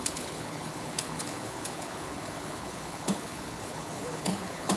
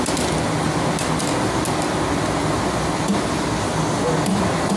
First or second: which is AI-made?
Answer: first